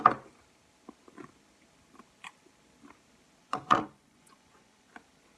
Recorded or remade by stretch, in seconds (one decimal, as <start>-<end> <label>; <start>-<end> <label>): 0.0-3.4 recorded; 3.4-4.9 remade; 4.9-5.4 recorded